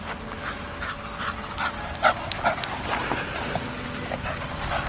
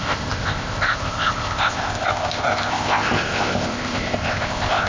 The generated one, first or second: second